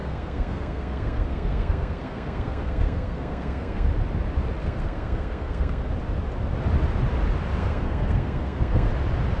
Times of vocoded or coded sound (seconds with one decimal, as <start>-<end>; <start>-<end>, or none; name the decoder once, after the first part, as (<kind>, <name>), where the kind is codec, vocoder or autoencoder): 0.0-3.9 (codec, SNAC); 4.6-5.9; 7.6-8.9